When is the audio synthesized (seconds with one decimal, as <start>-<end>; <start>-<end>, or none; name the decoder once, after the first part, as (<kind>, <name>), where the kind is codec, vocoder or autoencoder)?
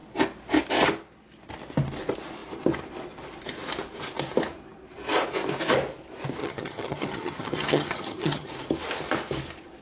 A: 6.4-8.5 (vocoder, HiFi-GAN)